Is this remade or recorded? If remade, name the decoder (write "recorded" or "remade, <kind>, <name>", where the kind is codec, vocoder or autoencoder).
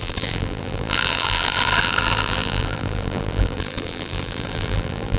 remade, vocoder, BigVGAN v2